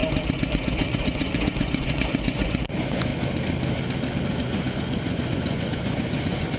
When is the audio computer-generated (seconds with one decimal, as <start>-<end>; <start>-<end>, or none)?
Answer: 0.5-3.1; 4.3-6.6

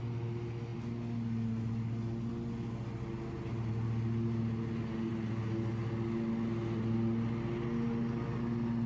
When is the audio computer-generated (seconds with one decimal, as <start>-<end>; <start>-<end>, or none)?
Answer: none

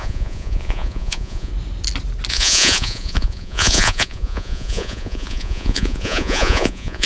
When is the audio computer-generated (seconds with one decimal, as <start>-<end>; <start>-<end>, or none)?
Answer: 0.0-1.5; 2.3-7.0

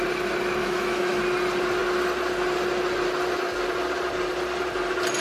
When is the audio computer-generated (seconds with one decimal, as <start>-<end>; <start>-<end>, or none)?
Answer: 0.6-1.2